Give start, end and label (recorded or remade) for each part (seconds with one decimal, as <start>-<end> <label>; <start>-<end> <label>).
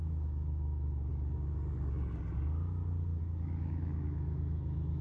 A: 0.0-1.1 remade; 1.1-3.2 recorded; 3.2-5.0 remade